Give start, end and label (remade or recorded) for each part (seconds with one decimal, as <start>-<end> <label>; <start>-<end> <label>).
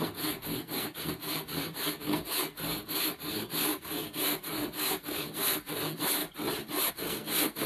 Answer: 0.0-6.2 remade; 6.2-6.9 recorded; 6.9-7.7 remade